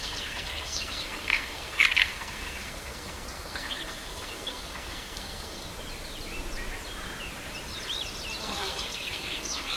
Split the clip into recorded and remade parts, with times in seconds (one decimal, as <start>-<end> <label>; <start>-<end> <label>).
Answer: 0.0-5.7 remade; 5.7-8.4 recorded; 8.4-9.8 remade